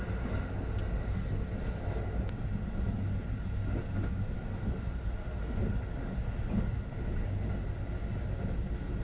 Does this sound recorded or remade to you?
recorded